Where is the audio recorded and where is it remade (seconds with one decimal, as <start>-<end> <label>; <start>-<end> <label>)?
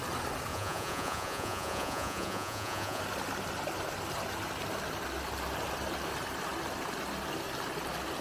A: 0.0-0.5 recorded; 0.5-3.0 remade; 3.0-8.2 recorded